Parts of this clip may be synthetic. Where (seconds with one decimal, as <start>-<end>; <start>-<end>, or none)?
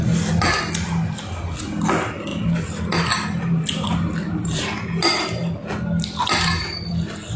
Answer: none